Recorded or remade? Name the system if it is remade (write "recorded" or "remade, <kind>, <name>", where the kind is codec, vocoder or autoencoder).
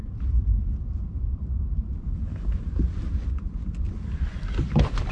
recorded